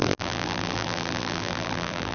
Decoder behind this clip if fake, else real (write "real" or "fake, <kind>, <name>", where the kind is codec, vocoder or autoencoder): fake, vocoder, BigVGAN v2